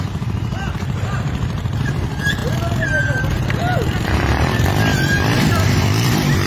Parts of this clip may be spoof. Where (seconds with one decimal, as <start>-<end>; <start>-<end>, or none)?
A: 0.0-2.4; 3.6-6.5

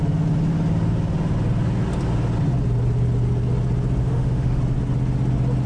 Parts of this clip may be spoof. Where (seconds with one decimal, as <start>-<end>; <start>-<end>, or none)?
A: 4.0-4.6